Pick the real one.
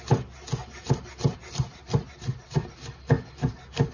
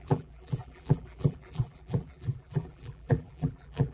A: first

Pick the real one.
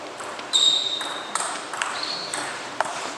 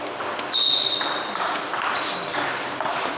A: second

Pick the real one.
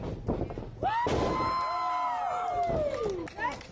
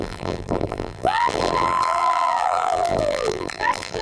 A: first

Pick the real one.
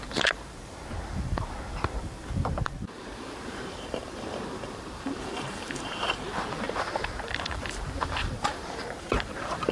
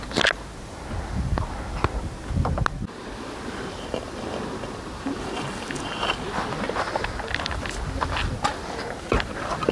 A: second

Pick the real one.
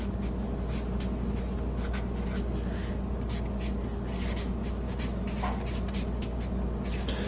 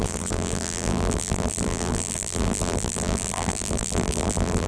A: first